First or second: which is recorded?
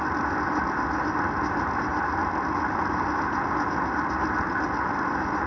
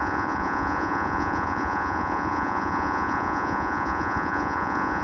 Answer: first